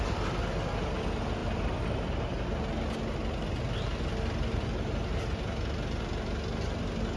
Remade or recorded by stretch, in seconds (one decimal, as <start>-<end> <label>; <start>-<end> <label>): 0.0-7.2 recorded